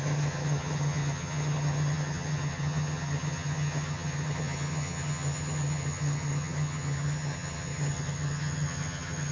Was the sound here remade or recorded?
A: remade